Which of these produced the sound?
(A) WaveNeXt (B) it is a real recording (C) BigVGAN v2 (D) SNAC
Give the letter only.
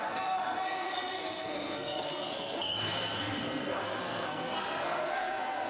D